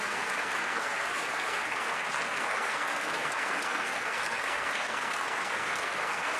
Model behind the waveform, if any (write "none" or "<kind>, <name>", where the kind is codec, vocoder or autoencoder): codec, SNAC